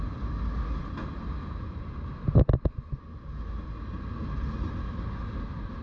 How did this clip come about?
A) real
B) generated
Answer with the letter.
A